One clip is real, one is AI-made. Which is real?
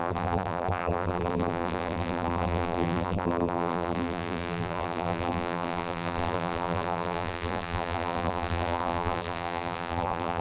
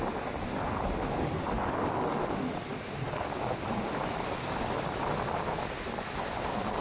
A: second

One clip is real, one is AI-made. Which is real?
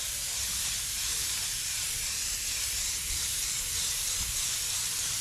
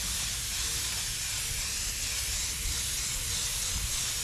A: second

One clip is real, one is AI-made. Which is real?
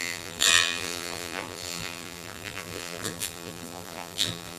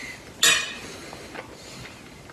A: second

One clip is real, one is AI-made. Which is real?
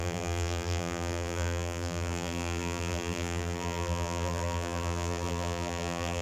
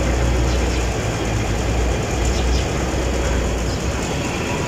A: second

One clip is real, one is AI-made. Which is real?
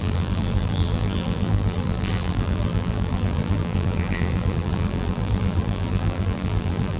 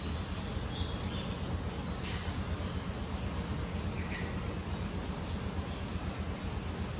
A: second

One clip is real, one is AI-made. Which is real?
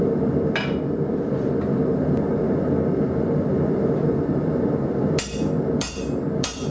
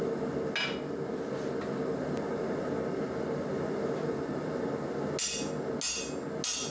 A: second